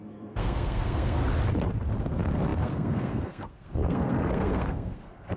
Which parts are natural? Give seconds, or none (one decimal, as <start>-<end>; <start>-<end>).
1.2-2.0